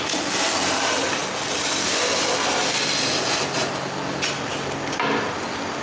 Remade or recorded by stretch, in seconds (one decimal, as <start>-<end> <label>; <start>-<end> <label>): 0.0-5.8 recorded